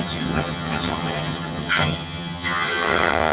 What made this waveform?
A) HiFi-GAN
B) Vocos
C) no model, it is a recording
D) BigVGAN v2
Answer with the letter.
A